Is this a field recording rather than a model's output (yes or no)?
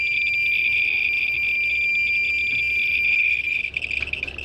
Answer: yes